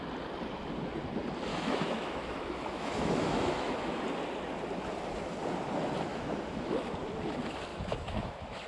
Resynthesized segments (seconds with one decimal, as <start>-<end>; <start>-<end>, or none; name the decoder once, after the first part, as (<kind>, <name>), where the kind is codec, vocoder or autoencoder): 1.5-4.0 (autoencoder, DAC-VAE); 6.1-6.7; 7.7-8.7